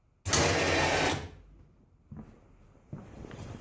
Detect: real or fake real